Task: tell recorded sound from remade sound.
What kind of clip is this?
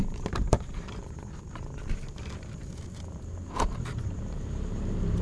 remade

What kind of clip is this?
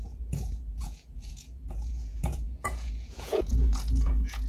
remade